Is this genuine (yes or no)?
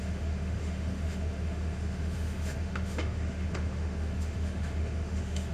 no